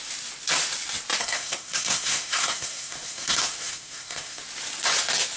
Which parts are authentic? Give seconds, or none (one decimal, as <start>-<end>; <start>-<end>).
0.0-1.2; 4.4-5.4